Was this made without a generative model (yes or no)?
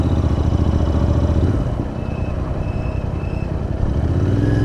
yes